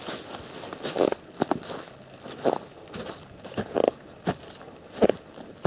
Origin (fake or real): real